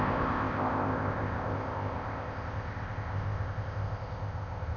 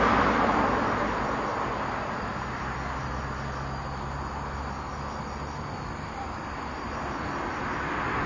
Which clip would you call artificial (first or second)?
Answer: first